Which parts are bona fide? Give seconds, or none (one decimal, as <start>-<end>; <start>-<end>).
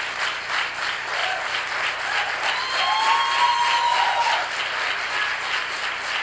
0.0-6.2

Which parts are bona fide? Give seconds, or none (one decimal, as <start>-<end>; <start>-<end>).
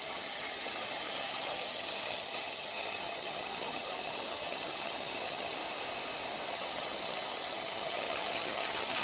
5.6-6.5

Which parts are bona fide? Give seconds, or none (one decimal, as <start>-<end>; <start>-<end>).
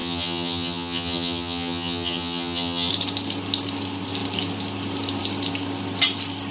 2.9-6.5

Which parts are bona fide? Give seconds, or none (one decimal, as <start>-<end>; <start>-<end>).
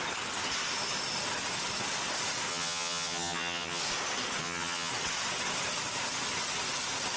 0.0-2.5; 3.8-4.4; 4.9-7.2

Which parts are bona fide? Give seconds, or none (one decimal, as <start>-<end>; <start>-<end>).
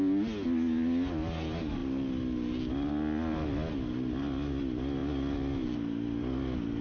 0.0-6.8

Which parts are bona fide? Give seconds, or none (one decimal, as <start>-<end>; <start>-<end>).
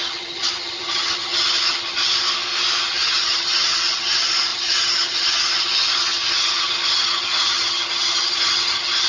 2.0-2.8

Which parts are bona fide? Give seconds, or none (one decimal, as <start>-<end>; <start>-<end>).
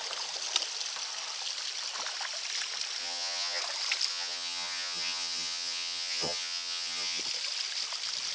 0.0-3.0; 3.6-4.1; 7.2-8.3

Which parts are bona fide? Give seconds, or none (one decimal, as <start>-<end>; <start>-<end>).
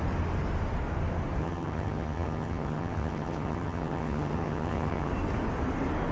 0.0-1.4; 5.1-6.1